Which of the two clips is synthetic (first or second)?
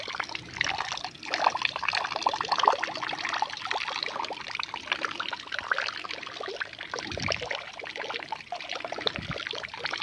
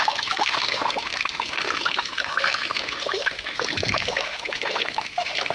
second